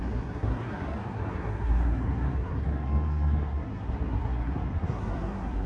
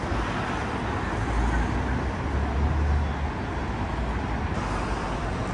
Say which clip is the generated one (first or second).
first